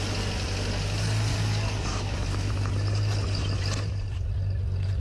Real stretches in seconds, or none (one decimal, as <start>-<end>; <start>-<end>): 0.0-1.3; 2.5-5.0